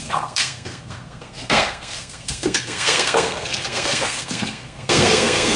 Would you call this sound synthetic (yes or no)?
yes